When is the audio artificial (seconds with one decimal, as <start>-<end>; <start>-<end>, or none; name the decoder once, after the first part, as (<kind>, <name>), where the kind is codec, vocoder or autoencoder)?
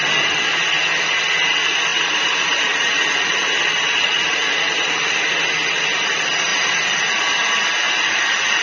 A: 1.9-5.2 (vocoder, BigVGAN v2); 6.5-7.5